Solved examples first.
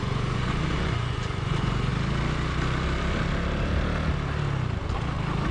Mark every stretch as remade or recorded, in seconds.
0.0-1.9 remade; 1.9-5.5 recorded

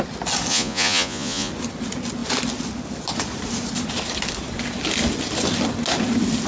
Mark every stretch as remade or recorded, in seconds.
0.0-0.5 recorded; 0.5-1.5 remade; 1.5-6.5 recorded

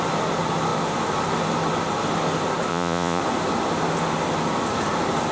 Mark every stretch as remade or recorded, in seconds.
0.0-2.7 recorded; 2.7-3.2 remade; 3.2-5.3 recorded

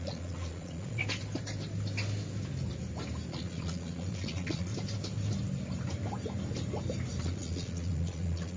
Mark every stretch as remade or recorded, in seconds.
0.0-1.0 remade; 1.0-3.3 recorded; 3.3-4.7 remade; 4.7-7.2 recorded; 7.2-8.6 remade

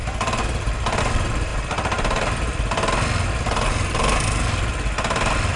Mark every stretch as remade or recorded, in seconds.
0.0-5.6 recorded

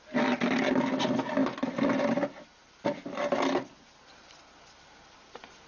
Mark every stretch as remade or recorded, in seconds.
0.0-5.7 recorded